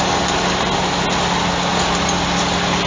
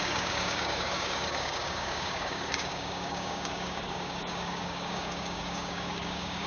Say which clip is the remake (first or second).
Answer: second